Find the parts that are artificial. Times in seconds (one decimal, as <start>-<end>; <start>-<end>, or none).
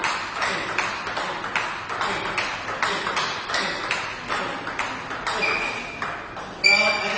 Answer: none